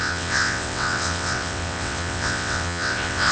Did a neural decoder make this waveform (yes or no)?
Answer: yes